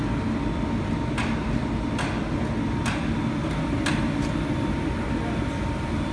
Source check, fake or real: real